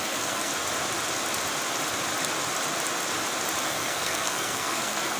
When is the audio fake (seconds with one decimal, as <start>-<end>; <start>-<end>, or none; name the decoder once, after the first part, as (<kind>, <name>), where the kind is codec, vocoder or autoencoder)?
0.0-0.5 (codec, SNAC); 3.6-5.2